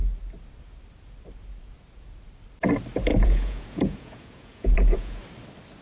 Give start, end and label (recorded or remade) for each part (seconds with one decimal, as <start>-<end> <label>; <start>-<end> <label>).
0.0-3.1 recorded; 3.1-5.2 remade; 5.2-5.8 recorded